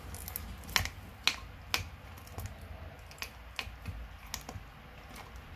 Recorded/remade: recorded